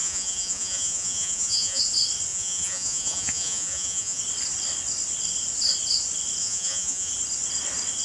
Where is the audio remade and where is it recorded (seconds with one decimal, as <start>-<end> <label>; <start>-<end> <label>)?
0.0-1.8 remade; 1.8-2.3 recorded; 2.3-4.2 remade; 4.2-6.4 recorded; 6.4-7.1 remade; 7.1-8.0 recorded

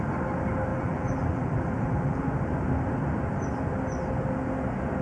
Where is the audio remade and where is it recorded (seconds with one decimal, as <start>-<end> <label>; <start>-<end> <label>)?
0.0-0.7 recorded; 0.7-2.3 remade; 2.3-5.0 recorded

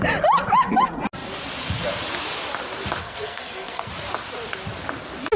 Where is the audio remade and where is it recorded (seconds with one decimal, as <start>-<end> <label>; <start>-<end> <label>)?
0.0-3.0 recorded; 3.0-3.9 remade; 3.9-5.4 recorded

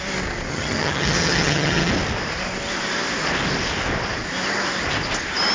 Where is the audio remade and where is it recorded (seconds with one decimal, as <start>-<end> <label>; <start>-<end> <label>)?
0.0-0.5 recorded; 0.5-1.9 remade; 1.9-5.5 recorded

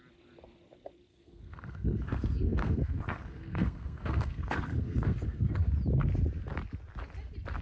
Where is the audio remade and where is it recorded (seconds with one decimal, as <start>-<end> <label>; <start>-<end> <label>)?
0.0-1.1 recorded; 1.1-5.7 remade; 5.7-7.6 recorded

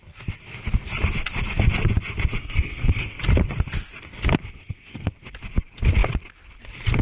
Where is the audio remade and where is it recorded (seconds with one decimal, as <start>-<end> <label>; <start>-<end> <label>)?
0.0-2.4 recorded; 2.4-3.2 remade; 3.2-4.5 recorded; 4.5-5.1 remade; 5.1-7.0 recorded

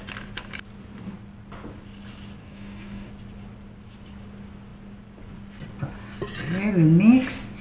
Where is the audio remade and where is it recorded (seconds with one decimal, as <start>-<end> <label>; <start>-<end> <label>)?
0.0-2.4 recorded; 2.4-3.1 remade; 3.1-7.6 recorded

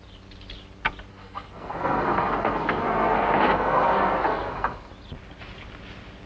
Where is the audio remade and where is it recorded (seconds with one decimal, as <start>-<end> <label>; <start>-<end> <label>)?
0.0-1.1 recorded; 1.1-4.9 remade; 4.9-6.3 recorded